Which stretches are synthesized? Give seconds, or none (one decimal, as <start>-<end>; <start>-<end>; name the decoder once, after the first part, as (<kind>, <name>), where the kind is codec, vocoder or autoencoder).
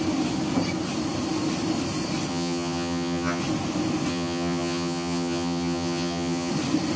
2.3-3.4 (vocoder, HiFi-GAN); 4.1-6.5